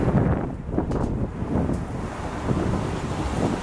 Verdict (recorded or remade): recorded